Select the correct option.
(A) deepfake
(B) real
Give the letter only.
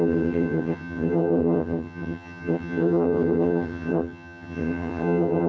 A